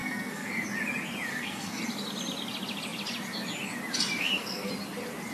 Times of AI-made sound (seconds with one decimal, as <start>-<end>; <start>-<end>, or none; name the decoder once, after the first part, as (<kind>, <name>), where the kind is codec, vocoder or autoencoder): 0.0-0.5 (codec, SNAC); 1.3-1.8; 4.2-4.7